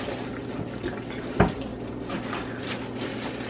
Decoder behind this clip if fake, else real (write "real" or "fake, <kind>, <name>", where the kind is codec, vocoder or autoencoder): real